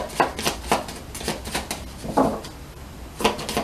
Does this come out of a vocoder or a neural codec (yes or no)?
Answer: no